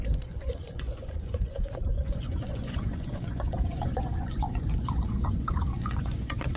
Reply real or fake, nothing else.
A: fake